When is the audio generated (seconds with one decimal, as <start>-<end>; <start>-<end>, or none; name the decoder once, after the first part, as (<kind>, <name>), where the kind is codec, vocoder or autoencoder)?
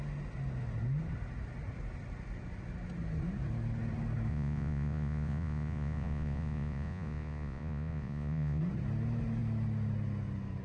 4.3-8.6 (vocoder, Vocos)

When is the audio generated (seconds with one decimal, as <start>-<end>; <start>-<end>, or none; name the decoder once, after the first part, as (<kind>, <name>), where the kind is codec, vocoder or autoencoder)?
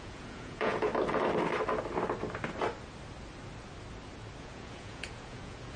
0.0-0.9 (vocoder, Vocos); 4.4-5.8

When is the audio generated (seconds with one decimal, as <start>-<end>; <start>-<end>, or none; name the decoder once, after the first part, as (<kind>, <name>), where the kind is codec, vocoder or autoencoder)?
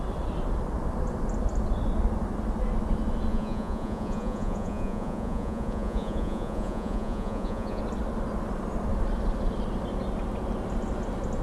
3.3-7.8 (vocoder, Vocos)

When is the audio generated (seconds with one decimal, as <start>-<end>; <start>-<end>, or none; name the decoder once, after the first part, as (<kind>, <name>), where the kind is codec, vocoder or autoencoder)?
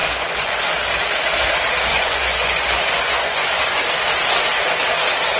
0.0-0.6 (vocoder, Vocos); 1.9-3.8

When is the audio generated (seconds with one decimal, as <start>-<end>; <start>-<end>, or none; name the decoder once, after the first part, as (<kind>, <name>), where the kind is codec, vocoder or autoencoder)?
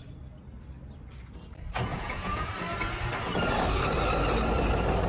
1.9-2.5 (vocoder, Vocos)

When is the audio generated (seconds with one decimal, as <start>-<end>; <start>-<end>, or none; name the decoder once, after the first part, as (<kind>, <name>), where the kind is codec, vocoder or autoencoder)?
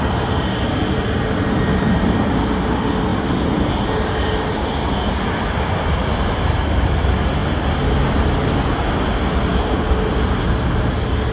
none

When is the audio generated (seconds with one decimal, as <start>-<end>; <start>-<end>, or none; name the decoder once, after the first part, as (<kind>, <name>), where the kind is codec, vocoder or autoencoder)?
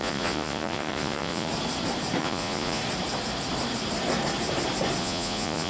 0.0-1.5 (vocoder, Vocos); 2.2-2.8; 5.0-5.7